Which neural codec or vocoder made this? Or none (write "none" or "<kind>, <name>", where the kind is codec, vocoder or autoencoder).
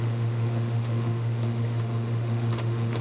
autoencoder, DAC-VAE